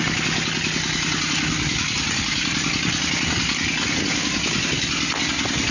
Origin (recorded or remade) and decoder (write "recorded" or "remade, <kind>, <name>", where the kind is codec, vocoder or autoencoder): recorded